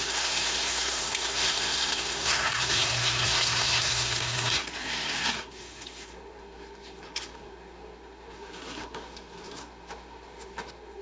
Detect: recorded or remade remade